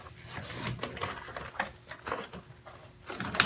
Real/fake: real